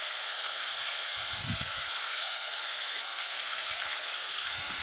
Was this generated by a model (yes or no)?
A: yes